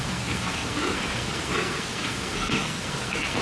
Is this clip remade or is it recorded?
remade